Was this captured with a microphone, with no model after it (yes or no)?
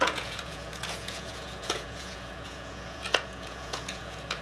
no